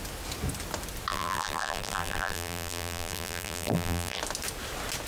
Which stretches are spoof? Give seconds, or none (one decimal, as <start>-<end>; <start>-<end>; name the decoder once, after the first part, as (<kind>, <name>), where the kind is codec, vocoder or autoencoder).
1.1-4.2 (vocoder, BigVGAN v2)